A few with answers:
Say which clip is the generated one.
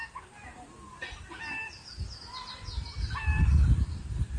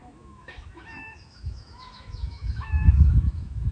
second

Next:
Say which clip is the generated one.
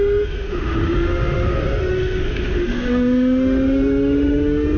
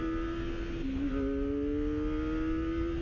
first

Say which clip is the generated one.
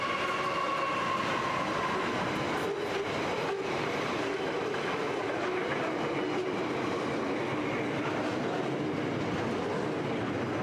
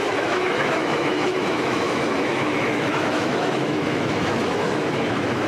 second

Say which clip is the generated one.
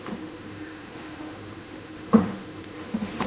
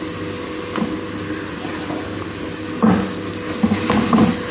first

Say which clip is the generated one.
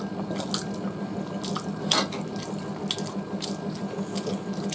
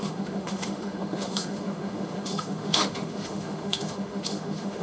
second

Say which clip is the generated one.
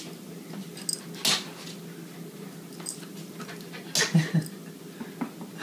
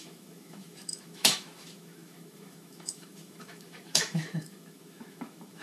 second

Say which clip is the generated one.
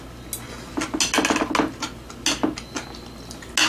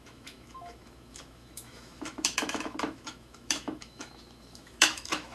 second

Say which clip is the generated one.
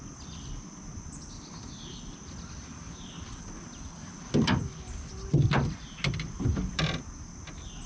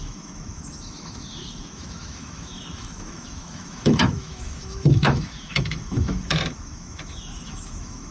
second